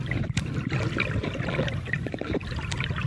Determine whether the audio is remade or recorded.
recorded